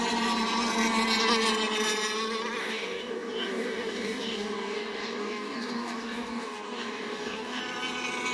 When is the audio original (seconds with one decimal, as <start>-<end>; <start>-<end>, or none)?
0.0-2.6; 7.6-8.3